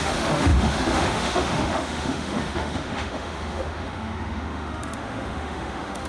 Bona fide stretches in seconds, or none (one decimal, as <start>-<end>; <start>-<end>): none